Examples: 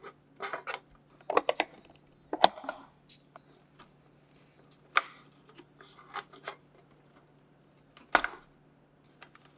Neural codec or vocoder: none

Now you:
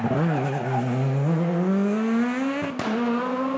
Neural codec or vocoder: none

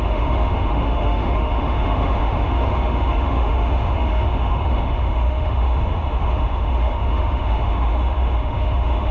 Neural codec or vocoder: autoencoder, DAC-VAE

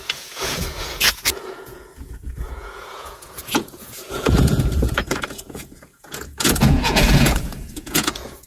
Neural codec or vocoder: vocoder, Vocos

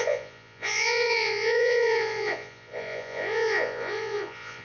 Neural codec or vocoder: vocoder, Vocos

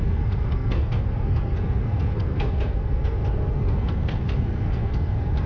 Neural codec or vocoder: codec, SNAC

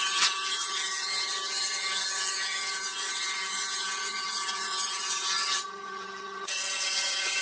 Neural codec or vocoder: vocoder, HiFi-GAN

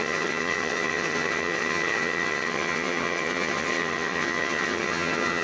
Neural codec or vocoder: vocoder, HiFi-GAN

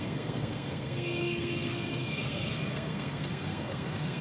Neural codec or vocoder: codec, SNAC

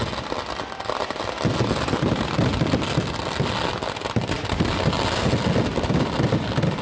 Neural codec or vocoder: none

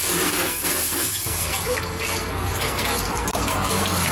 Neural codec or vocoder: codec, SNAC